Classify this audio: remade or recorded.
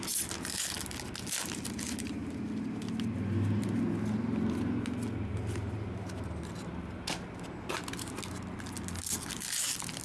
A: recorded